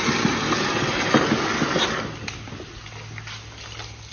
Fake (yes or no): no